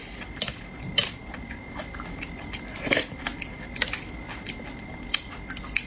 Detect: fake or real real